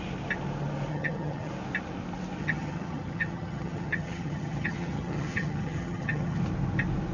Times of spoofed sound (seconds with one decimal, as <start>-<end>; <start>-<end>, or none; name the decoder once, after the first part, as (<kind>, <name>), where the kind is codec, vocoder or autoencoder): 0.9-1.5 (vocoder, HiFi-GAN); 2.4-6.4